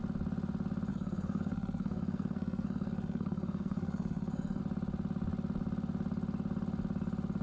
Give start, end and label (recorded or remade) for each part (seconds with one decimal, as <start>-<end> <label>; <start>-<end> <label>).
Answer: 0.0-0.9 recorded; 0.9-4.6 remade; 4.6-7.4 recorded